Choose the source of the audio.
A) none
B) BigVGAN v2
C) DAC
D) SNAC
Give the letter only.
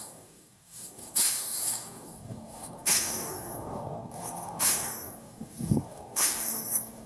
C